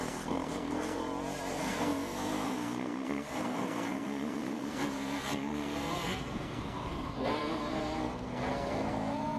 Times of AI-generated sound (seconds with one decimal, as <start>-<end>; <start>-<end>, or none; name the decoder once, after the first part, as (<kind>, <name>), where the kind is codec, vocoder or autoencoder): 0.0-1.0 (codec, SNAC); 1.5-9.4